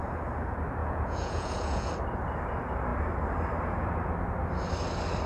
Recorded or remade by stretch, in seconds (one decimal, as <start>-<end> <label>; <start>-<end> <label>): 0.0-0.8 recorded; 0.8-1.9 remade; 1.9-5.3 recorded